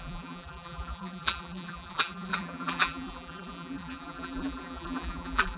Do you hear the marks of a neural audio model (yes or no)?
yes